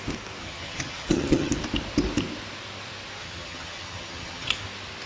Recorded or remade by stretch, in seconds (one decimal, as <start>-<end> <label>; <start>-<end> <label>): 0.0-0.4 recorded; 0.4-1.5 remade; 1.5-3.2 recorded; 3.2-4.5 remade; 4.5-5.1 recorded